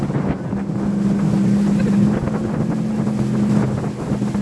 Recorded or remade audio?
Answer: recorded